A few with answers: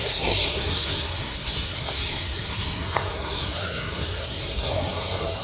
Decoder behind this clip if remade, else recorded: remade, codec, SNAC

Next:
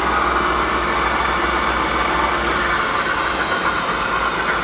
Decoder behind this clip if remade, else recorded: recorded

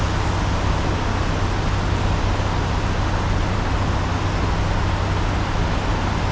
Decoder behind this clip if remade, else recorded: recorded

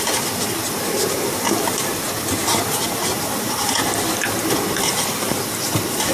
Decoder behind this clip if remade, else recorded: recorded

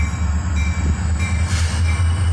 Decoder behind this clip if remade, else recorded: recorded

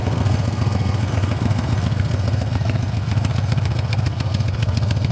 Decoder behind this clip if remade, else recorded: remade, codec, SNAC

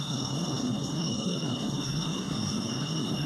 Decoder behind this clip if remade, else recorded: remade, codec, SNAC